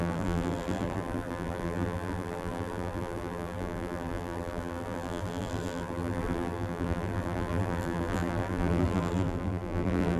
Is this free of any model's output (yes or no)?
no